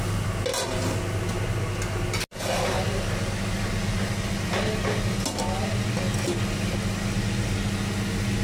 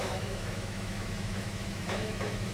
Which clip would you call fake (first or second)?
second